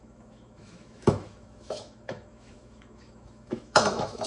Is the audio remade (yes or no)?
yes